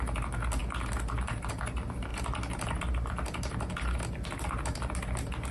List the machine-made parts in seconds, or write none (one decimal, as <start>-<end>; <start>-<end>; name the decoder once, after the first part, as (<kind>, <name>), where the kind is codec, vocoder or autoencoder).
none